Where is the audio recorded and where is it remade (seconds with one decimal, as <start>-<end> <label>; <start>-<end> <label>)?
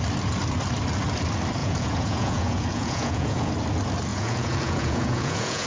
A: 0.0-1.6 recorded; 1.6-3.5 remade; 3.5-4.1 recorded; 4.1-5.7 remade